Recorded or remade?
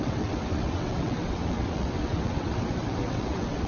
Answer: remade